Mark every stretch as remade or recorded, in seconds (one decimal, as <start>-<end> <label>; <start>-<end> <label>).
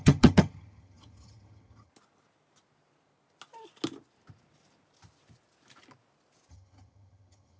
0.0-1.9 remade; 1.9-6.5 recorded; 6.5-7.6 remade